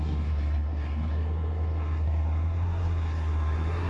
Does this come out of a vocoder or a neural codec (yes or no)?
yes